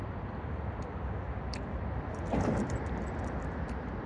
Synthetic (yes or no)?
no